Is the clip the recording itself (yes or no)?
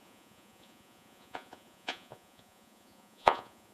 no